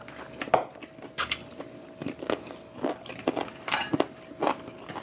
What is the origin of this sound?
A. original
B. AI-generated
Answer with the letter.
A